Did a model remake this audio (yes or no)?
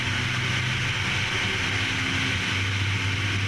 no